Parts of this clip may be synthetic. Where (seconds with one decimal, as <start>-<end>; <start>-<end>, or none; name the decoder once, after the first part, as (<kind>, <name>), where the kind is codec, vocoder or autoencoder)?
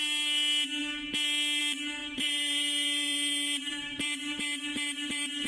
2.0-5.5 (vocoder, BigVGAN v2)